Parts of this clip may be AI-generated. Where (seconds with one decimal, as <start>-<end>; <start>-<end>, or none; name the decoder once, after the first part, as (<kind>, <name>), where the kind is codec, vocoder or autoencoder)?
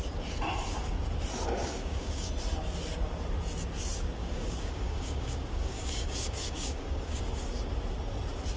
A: 1.6-2.3 (codec, DAC); 4.2-7.2